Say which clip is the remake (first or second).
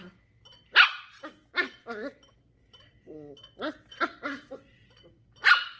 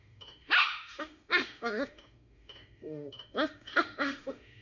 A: second